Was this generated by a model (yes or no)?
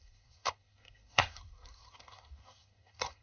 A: yes